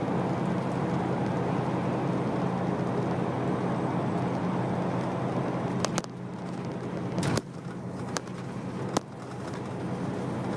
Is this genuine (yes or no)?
yes